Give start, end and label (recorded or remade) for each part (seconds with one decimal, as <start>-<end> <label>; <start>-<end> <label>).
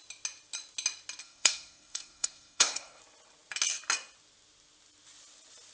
0.0-1.2 recorded; 1.2-3.0 remade; 3.0-5.7 recorded